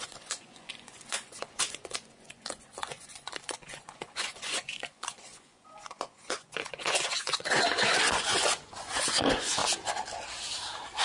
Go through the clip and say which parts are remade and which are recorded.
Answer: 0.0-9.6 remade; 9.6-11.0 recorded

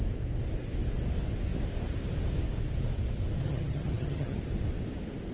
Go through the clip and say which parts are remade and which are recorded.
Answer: 0.0-3.4 recorded; 3.4-4.4 remade; 4.4-5.3 recorded

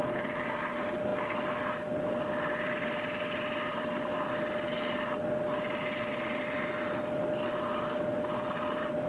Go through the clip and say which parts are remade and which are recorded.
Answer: 0.0-9.1 recorded